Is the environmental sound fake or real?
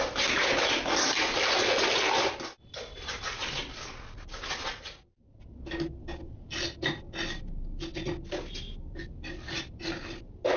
real